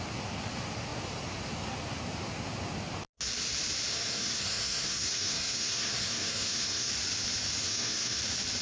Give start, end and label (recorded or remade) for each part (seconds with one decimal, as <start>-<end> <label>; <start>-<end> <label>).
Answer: 0.0-3.9 recorded; 3.9-6.9 remade; 6.9-7.6 recorded; 7.6-8.2 remade; 8.2-8.6 recorded